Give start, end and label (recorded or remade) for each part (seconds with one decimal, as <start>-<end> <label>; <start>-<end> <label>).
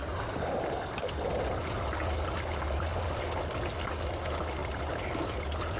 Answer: 0.0-0.9 remade; 0.9-2.9 recorded; 2.9-3.9 remade; 3.9-4.6 recorded; 4.6-5.8 remade